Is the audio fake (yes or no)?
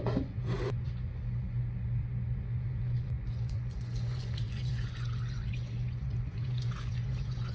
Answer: yes